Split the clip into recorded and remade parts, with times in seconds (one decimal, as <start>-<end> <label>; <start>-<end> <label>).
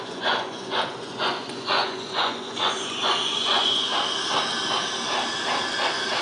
0.0-3.9 remade; 3.9-6.2 recorded